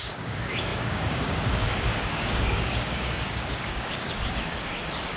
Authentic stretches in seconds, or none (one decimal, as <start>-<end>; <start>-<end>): none